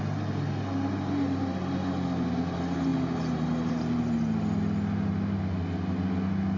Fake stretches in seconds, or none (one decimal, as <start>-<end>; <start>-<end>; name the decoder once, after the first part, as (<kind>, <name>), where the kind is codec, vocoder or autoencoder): none

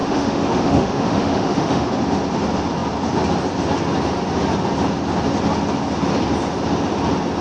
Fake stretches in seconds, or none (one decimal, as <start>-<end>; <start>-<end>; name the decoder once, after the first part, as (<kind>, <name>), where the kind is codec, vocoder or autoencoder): 0.0-1.9 (autoencoder, DAC-VAE)